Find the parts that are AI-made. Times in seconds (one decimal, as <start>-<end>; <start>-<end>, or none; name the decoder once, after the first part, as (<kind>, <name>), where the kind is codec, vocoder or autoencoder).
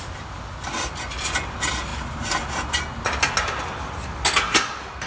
none